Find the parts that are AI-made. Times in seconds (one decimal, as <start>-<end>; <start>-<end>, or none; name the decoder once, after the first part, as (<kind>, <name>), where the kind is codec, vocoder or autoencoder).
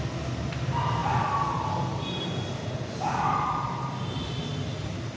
none